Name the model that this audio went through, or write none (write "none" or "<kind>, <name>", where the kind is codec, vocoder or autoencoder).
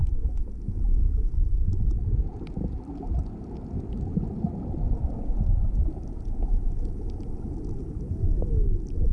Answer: none